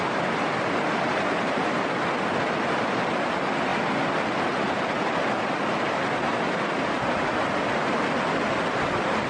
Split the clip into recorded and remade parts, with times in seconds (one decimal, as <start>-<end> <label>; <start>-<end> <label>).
0.0-9.3 recorded

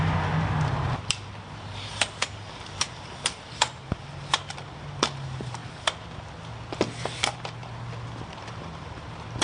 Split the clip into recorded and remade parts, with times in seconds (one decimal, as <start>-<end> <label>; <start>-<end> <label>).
0.0-5.6 remade; 5.6-7.0 recorded; 7.0-7.6 remade; 7.6-8.5 recorded; 8.5-9.4 remade

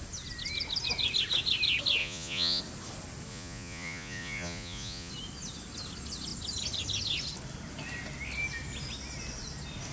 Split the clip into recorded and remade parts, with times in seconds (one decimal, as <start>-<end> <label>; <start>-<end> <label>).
0.0-2.0 recorded; 2.0-2.6 remade; 2.6-3.3 recorded; 3.3-5.1 remade; 5.1-9.9 recorded

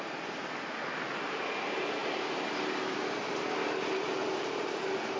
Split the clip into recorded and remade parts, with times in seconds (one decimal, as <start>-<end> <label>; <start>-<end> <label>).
0.0-5.2 recorded

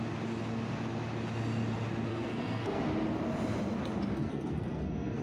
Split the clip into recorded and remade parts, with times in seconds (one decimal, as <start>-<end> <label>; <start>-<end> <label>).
0.0-2.1 recorded; 2.1-2.8 remade; 2.8-4.1 recorded; 4.1-5.2 remade

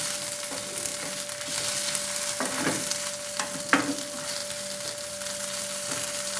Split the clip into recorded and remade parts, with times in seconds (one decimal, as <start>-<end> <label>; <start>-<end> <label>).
0.0-6.4 recorded